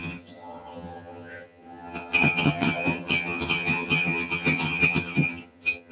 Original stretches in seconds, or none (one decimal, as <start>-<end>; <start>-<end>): none